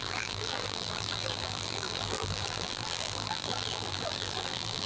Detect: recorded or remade remade